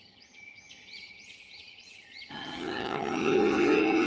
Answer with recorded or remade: remade